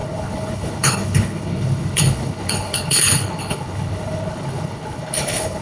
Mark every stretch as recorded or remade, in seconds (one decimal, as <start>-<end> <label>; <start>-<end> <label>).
0.0-5.6 remade